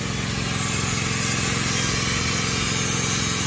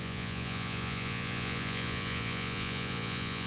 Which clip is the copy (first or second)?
second